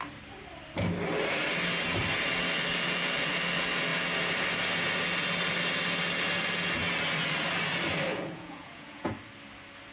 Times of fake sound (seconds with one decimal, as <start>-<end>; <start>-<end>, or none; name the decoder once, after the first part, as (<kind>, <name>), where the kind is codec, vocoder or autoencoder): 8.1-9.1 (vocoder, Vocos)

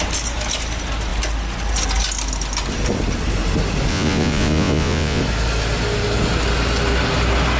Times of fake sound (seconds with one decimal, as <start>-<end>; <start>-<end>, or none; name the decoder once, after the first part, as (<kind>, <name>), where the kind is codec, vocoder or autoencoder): 3.9-5.2 (vocoder, Vocos)

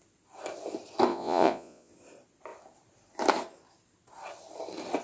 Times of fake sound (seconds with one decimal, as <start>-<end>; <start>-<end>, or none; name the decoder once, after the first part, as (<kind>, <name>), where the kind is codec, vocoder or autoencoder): 1.1-1.9 (vocoder, Vocos)

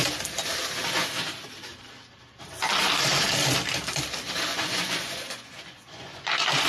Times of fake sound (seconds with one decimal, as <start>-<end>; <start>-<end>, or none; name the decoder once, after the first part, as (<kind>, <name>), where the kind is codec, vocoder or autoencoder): 4.5-6.3 (vocoder, Vocos)

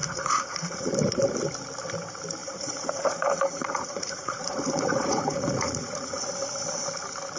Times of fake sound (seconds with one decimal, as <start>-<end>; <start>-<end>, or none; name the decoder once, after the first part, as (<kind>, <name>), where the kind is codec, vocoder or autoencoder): 0.0-0.9 (vocoder, Vocos); 2.4-6.3

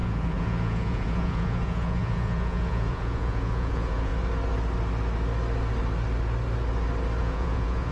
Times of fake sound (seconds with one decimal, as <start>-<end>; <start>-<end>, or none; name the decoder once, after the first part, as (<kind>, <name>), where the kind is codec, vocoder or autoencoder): 0.0-4.1 (vocoder, Vocos); 7.2-7.9

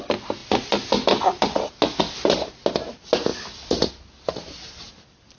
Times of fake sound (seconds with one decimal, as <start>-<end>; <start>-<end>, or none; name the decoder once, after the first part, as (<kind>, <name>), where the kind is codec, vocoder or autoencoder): none